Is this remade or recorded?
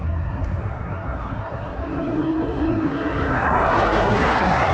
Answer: remade